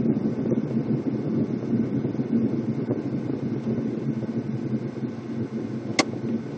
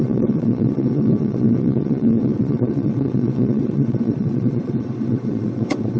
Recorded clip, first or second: first